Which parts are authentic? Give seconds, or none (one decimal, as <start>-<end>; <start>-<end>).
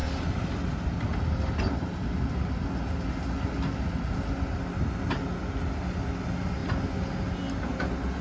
0.0-8.2